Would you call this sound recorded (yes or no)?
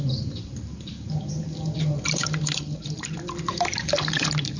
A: no